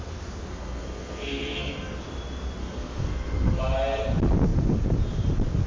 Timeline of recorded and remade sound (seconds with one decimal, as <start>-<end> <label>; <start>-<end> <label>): 0.0-0.5 recorded; 0.5-1.7 remade; 1.7-2.6 recorded; 2.6-3.6 remade; 3.6-5.7 recorded